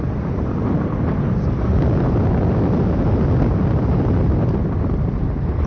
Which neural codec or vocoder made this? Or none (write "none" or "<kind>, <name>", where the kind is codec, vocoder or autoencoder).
none